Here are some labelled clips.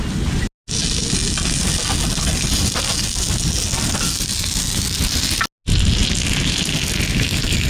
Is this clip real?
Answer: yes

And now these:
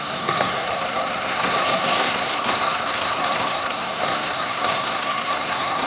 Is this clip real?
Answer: no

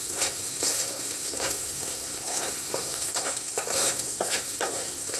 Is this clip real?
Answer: no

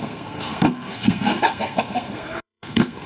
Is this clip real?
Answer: no